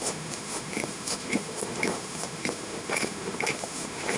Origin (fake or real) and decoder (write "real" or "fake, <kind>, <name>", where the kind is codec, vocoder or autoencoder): fake, autoencoder, DAC-VAE